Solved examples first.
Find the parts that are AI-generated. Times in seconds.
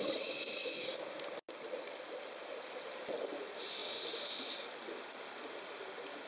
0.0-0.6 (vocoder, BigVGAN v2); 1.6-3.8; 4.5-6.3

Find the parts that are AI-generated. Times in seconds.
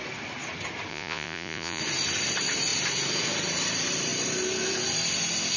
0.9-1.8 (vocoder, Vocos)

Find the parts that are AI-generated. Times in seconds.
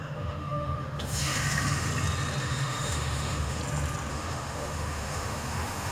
0.0-1.9 (autoencoder, DAC-VAE); 2.4-3.6; 4.1-5.9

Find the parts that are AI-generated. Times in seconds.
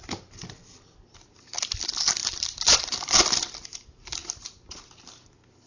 none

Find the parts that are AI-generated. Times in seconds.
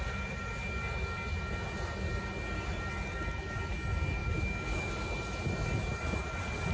4.2-4.9 (autoencoder, DAC-VAE)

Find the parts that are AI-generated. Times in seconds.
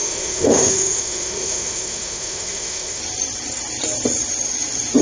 0.0-3.0 (autoencoder, DAC-VAE)